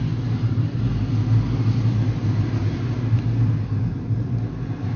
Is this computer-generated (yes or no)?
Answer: no